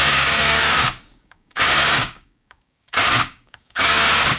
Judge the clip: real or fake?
fake